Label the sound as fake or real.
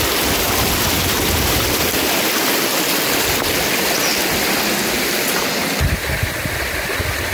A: real